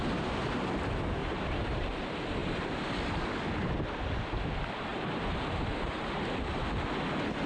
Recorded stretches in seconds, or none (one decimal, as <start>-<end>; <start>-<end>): 0.0-1.2; 1.9-2.4; 3.1-4.9; 6.0-7.5